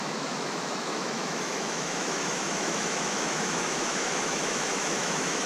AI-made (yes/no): yes